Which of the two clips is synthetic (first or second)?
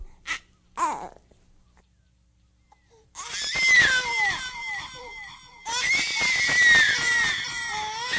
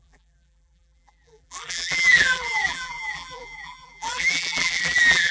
second